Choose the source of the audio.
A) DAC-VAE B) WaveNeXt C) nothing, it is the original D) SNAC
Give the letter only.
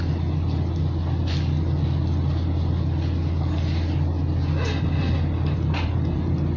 C